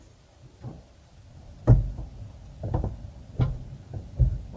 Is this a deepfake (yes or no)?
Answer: no